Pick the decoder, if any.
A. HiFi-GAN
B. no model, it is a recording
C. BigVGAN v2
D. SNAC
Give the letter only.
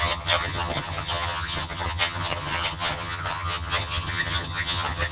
A